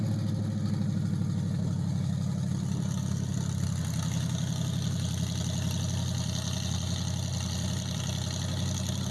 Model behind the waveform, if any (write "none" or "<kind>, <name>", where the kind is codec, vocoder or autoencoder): none